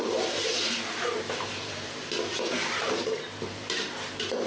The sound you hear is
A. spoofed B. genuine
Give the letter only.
A